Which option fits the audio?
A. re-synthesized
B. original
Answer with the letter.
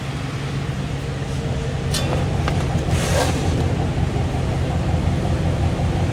B